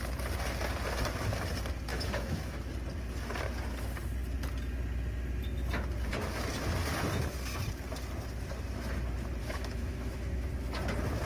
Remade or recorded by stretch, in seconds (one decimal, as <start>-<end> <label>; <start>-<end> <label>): 0.0-1.9 recorded; 1.9-2.6 remade; 2.6-9.4 recorded; 9.4-10.5 remade; 10.5-11.3 recorded